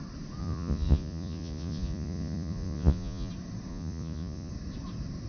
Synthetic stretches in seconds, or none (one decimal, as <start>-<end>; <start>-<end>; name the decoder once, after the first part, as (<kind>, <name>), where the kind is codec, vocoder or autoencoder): 0.4-3.3 (vocoder, Vocos); 3.7-4.5